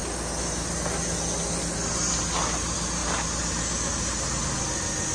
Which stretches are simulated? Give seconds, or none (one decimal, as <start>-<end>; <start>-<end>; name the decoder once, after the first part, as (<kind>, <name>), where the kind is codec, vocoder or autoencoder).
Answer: none

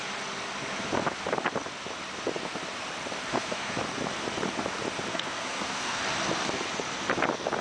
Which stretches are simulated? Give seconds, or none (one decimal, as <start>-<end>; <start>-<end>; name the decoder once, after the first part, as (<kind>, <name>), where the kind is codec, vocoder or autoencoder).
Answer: 3.3-3.8 (codec, SNAC); 5.1-6.0

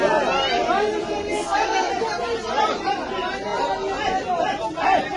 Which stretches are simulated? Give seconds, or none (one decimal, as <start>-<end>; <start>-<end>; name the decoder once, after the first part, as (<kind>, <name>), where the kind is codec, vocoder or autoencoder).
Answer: 1.0-1.9 (codec, SNAC)

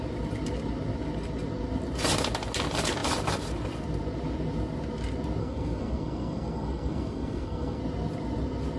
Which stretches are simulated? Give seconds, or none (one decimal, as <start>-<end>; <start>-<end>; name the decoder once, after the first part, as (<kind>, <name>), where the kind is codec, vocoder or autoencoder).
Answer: 5.4-7.8 (codec, SNAC)

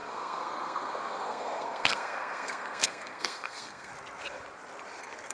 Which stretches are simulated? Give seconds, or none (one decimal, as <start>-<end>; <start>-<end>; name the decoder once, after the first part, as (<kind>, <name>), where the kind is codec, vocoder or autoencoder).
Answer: 0.0-3.9 (codec, SNAC)

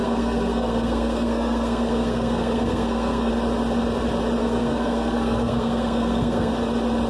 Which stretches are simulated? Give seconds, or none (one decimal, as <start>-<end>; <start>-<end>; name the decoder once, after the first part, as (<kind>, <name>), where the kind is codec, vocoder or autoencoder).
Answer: 0.0-3.3 (codec, SNAC); 4.4-6.5

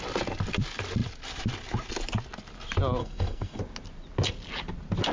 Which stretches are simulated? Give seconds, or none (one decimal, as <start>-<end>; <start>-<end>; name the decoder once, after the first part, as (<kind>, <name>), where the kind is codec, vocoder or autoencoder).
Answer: 3.0-3.6 (codec, SNAC)

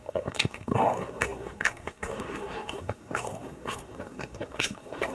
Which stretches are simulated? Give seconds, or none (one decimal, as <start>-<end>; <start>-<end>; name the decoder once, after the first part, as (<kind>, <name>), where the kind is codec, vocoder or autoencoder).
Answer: 0.0-5.1 (codec, SNAC)